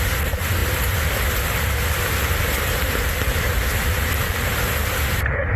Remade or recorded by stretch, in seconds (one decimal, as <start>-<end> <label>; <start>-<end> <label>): 0.0-5.6 recorded